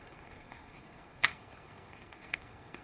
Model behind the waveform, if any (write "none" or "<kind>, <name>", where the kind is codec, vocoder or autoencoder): codec, SNAC